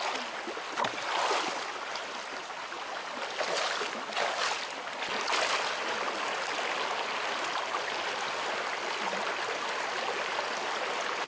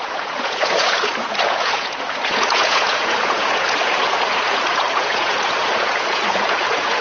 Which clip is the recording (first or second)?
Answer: first